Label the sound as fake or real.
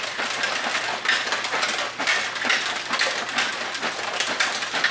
real